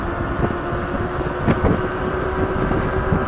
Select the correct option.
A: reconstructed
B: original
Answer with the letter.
B